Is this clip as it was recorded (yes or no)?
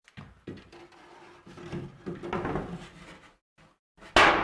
yes